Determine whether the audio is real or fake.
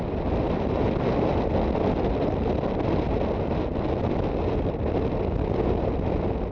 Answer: real